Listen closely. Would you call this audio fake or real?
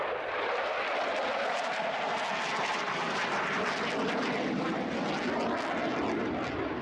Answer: real